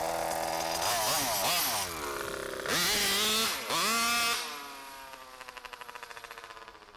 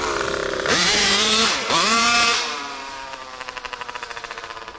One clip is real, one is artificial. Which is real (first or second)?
first